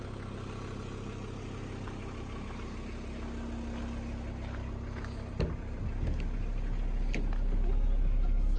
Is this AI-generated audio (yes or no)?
no